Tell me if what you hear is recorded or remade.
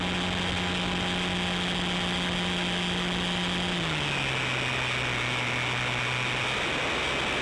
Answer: recorded